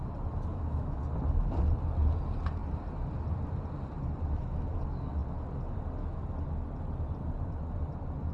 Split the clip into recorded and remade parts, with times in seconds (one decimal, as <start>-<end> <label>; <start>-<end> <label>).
0.0-0.5 recorded; 0.5-1.0 remade; 1.0-8.3 recorded